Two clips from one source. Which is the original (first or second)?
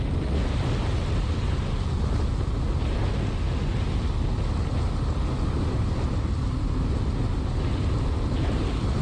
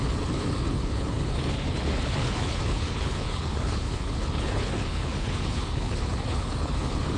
first